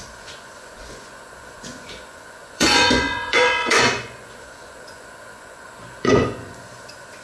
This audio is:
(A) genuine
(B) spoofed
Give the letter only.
B